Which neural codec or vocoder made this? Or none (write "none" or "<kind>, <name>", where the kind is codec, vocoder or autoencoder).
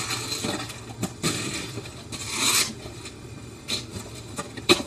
vocoder, BigVGAN v2